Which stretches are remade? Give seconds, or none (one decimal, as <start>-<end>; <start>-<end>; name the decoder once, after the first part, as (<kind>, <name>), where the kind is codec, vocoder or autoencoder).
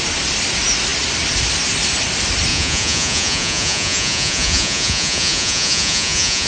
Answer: 2.5-6.5 (vocoder, Vocos)